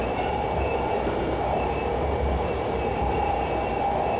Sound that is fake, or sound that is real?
fake